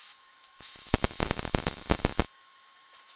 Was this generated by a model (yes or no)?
yes